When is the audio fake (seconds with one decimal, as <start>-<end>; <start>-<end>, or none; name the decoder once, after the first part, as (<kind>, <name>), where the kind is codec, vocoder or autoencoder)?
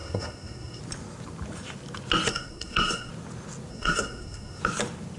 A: 0.0-0.8 (codec, SNAC); 2.3-3.1; 3.7-4.6